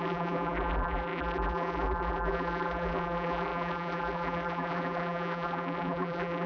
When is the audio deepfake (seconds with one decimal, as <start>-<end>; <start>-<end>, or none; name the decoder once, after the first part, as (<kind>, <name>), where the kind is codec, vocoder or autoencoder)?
0.0-6.5 (vocoder, BigVGAN v2)